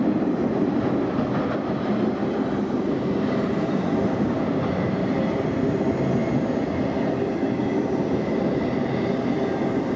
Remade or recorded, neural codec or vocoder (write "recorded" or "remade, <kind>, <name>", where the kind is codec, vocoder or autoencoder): recorded